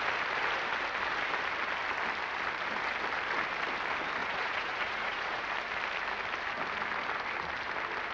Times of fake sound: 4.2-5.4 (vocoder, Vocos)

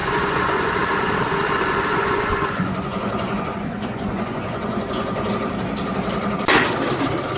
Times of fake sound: 0.0-0.7 (vocoder, Vocos); 1.9-5.3

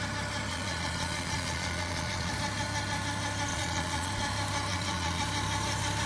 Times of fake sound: 0.5-2.3 (vocoder, Vocos); 3.5-4.1; 4.7-5.2

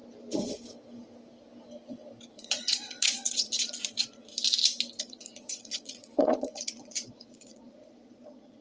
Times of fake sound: 2.3-4.3 (vocoder, Vocos); 5.0-8.6